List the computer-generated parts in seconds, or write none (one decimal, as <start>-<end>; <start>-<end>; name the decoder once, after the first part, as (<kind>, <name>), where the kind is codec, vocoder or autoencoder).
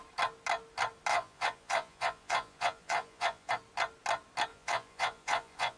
1.1-3.5 (vocoder, Vocos); 4.5-5.8